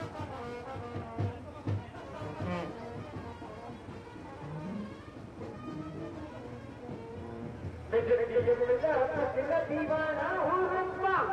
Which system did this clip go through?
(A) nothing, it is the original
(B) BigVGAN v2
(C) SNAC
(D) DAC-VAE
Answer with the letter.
A